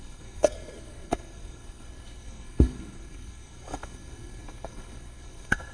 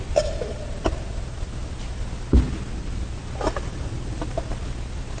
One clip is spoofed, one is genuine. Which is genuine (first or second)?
second